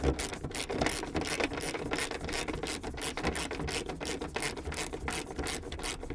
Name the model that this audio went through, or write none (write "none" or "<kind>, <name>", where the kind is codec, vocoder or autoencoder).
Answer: none